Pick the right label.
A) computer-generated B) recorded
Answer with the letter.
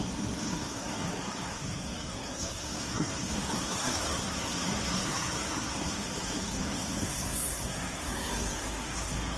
A